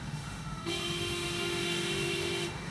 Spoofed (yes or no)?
yes